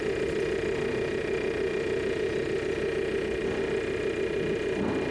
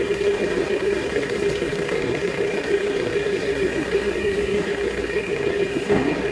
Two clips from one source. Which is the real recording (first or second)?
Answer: first